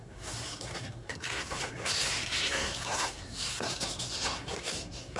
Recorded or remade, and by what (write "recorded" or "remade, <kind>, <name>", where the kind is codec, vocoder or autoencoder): remade, codec, SNAC